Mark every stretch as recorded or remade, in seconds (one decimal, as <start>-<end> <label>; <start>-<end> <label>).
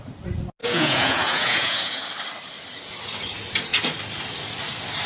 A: 0.0-0.6 recorded; 0.6-2.0 remade; 2.0-5.1 recorded